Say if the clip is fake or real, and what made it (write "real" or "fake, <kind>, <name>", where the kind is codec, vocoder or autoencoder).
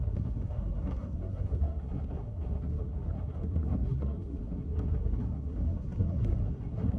fake, codec, SNAC